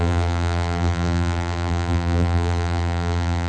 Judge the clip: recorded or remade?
remade